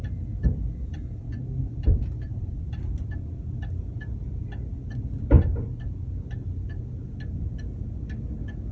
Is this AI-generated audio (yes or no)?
no